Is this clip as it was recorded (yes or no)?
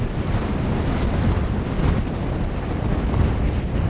yes